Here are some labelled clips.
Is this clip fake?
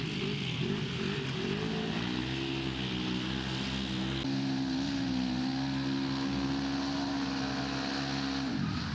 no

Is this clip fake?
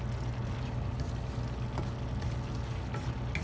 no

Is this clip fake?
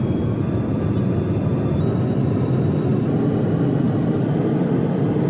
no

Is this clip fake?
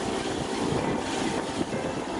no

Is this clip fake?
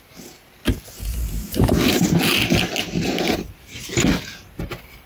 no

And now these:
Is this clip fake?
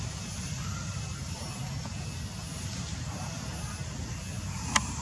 no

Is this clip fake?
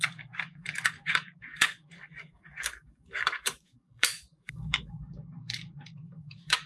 yes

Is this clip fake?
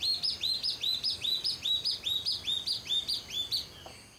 no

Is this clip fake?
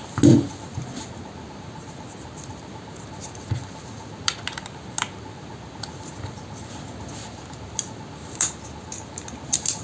no